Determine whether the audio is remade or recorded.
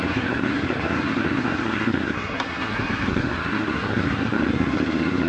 remade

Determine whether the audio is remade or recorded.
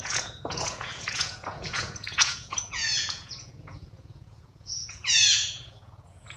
remade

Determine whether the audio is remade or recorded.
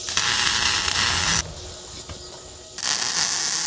recorded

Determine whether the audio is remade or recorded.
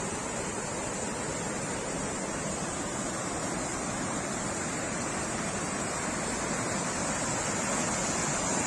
recorded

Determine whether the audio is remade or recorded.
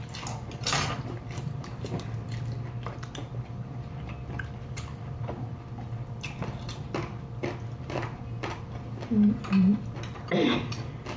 recorded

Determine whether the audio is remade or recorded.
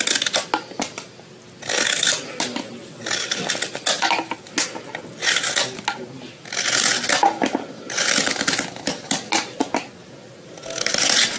recorded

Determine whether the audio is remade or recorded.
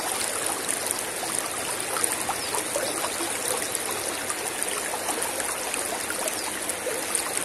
recorded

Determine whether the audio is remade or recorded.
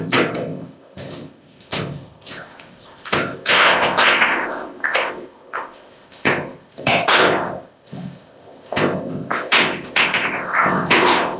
remade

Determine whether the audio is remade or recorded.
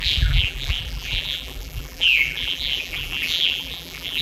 remade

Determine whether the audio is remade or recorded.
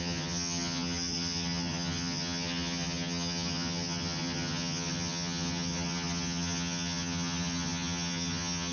remade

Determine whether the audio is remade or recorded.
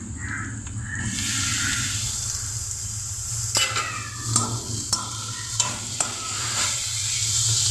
recorded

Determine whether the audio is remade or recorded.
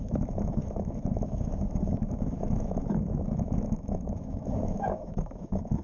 remade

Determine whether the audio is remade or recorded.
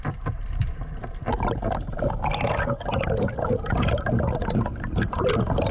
recorded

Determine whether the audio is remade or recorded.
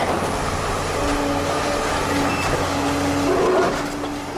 recorded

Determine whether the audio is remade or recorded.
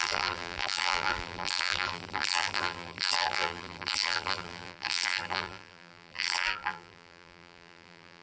remade